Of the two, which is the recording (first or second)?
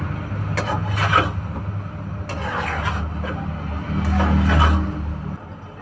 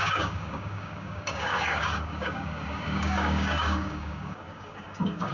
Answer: first